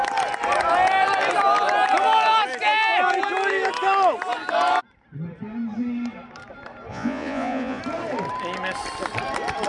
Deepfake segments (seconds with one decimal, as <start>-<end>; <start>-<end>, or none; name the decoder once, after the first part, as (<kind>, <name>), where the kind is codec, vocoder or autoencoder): 6.9-7.8 (vocoder, Vocos)